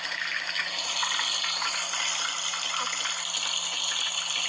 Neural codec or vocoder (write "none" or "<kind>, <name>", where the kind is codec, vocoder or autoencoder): none